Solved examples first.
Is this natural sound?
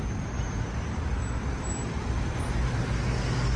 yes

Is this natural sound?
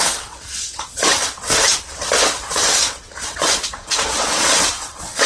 no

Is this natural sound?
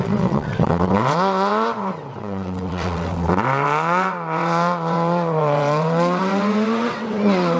no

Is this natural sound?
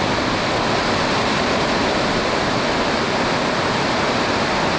yes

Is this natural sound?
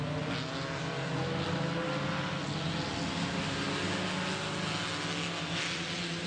yes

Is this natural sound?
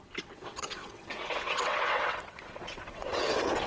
no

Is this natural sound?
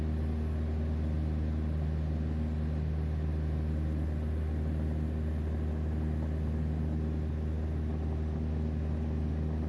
yes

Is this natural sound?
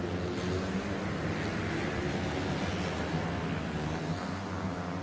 yes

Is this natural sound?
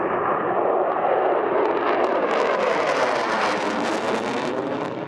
yes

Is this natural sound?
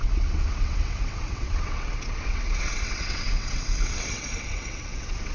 no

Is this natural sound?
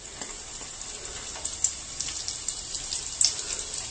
yes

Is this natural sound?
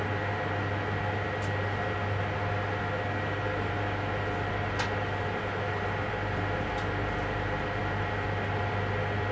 yes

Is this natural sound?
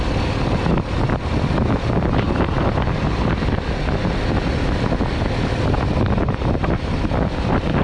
yes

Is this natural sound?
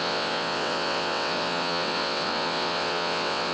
no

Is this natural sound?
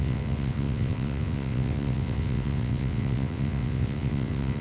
no